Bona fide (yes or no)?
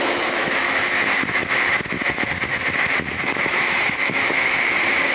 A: no